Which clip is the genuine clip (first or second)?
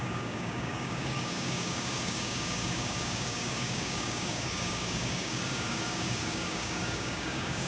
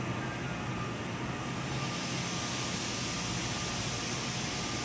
second